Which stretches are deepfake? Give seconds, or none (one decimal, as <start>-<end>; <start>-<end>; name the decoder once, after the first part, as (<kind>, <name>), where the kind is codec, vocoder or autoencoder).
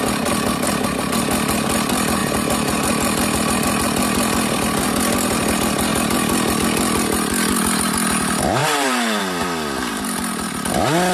8.6-9.2 (vocoder, BigVGAN v2); 9.9-10.5